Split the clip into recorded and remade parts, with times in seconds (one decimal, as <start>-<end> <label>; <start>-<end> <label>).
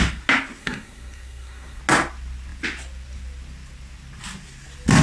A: 0.0-0.6 recorded; 0.6-1.8 remade; 1.8-5.0 recorded